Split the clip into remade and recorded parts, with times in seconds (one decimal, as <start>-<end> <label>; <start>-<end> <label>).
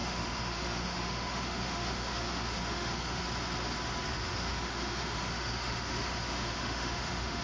0.0-3.2 remade; 3.2-4.1 recorded; 4.1-7.4 remade